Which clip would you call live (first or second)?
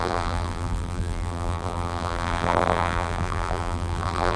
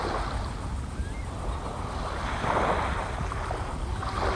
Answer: second